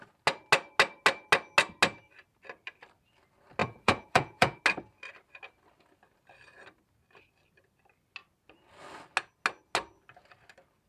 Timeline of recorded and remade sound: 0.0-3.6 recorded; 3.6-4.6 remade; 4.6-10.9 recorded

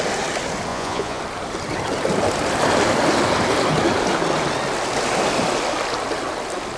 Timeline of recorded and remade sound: 0.0-0.7 recorded; 0.7-1.2 remade; 1.2-6.8 recorded

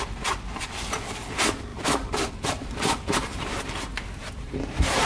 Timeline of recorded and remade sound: 0.0-1.7 recorded; 1.7-2.3 remade; 2.3-3.9 recorded; 3.9-5.1 remade

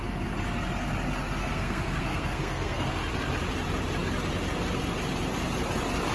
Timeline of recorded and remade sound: 0.0-1.4 recorded; 1.4-2.9 remade; 2.9-6.1 recorded

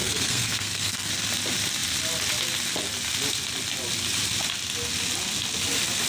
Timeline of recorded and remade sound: 0.0-1.1 remade; 1.1-6.1 recorded

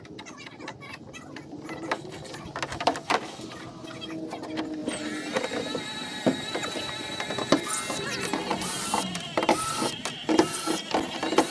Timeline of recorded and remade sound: 0.0-11.5 recorded

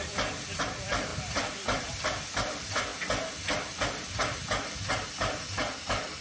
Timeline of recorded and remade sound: 0.0-1.1 remade; 1.1-1.8 recorded; 1.8-2.9 remade; 2.9-5.5 recorded; 5.5-6.2 remade

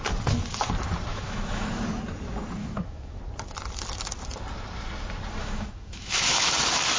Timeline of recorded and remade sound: 0.0-1.1 recorded; 1.1-1.8 remade; 1.8-2.6 recorded; 2.6-3.2 remade; 3.2-5.4 recorded; 5.4-6.5 remade; 6.5-7.0 recorded